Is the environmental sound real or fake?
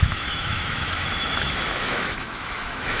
fake